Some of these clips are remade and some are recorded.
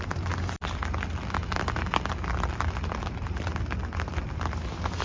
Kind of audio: recorded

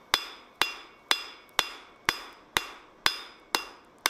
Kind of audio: recorded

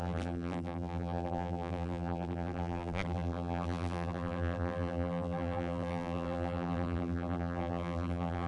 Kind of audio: remade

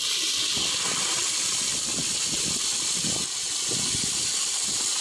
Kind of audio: recorded